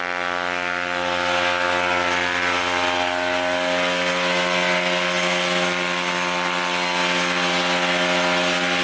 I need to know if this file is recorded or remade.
recorded